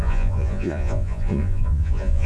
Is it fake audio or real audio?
fake